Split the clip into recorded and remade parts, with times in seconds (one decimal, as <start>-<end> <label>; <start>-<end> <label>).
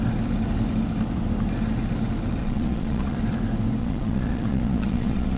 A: 0.0-2.4 recorded; 2.4-3.2 remade; 3.2-3.8 recorded; 3.8-5.4 remade